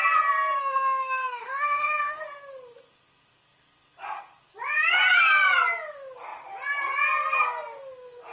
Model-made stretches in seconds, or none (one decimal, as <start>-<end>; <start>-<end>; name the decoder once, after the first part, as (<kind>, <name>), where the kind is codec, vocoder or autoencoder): 0.6-2.2 (autoencoder, DAC-VAE)

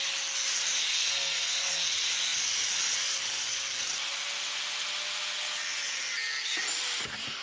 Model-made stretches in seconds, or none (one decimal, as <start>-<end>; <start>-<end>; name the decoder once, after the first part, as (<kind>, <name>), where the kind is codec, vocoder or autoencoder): 0.9-1.7 (codec, SNAC)